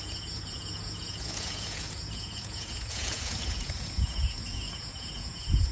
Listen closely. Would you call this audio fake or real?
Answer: fake